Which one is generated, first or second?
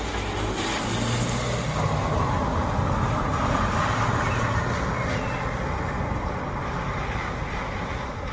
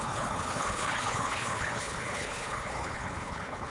second